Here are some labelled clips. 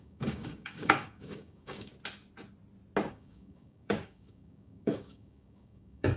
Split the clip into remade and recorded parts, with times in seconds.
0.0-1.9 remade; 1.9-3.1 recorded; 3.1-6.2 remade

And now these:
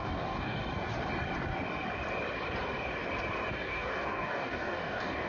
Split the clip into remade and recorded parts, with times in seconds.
0.0-0.6 remade; 0.6-3.5 recorded; 3.5-5.3 remade